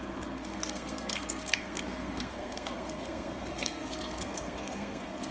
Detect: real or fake fake